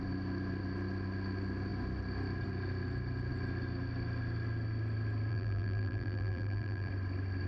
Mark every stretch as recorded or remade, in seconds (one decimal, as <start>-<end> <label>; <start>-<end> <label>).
0.0-5.3 recorded; 5.3-6.9 remade; 6.9-7.5 recorded